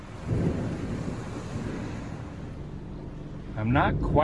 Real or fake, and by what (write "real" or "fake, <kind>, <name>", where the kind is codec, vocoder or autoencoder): real